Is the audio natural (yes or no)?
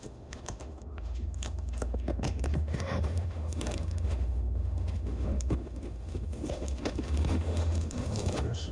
no